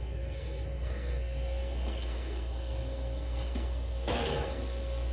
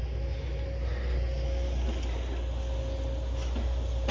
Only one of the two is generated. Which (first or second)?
first